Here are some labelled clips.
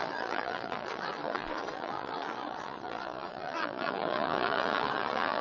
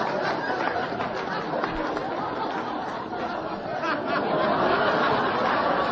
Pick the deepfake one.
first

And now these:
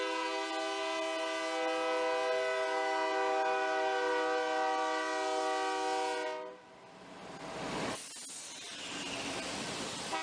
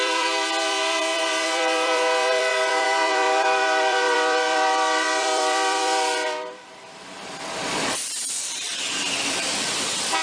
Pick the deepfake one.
second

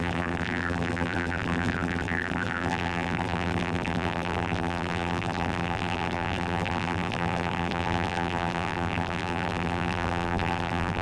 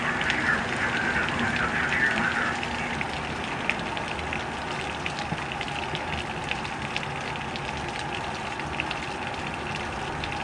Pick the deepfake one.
first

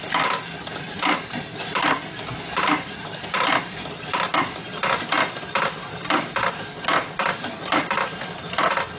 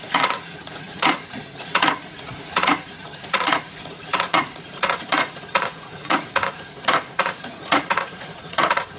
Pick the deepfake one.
second